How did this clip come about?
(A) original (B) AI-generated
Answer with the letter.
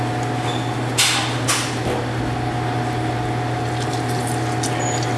A